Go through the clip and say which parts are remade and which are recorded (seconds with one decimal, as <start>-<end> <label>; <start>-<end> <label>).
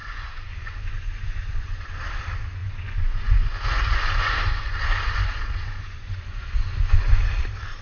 0.0-2.0 remade; 2.0-2.6 recorded; 2.6-7.3 remade; 7.3-7.8 recorded